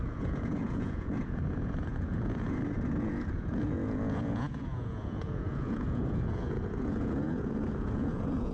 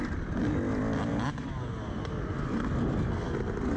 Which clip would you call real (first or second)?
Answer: second